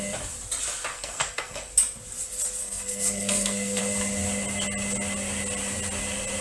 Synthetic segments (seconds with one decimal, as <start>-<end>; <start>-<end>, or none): 0.9-1.7; 2.6-3.8

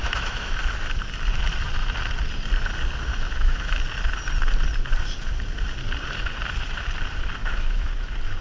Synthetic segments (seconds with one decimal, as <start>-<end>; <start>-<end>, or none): 0.0-0.6; 3.1-3.8; 7.4-7.9

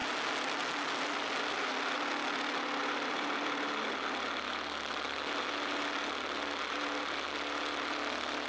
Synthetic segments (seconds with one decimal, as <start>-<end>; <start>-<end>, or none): none